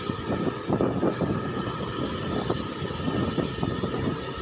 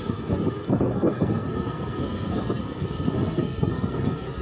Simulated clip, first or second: second